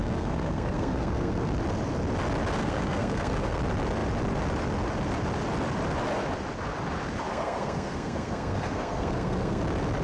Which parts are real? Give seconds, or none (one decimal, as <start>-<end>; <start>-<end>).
1.5-2.6; 3.6-7.3; 9.6-10.0